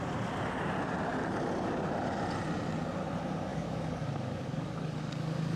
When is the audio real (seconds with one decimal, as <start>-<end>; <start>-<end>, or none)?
0.0-3.5